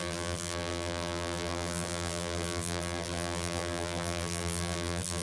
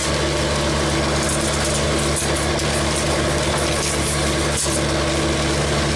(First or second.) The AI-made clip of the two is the first